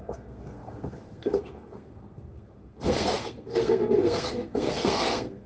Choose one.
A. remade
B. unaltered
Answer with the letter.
A